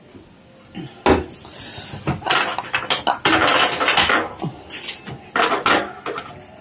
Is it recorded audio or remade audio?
recorded